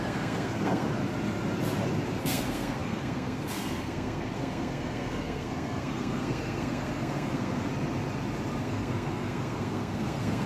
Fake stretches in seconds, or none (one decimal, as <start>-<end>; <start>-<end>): 0.0-1.0; 2.2-7.7; 8.6-10.5